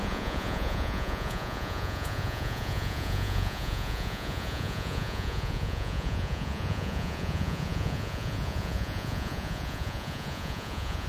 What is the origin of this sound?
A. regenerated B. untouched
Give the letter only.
A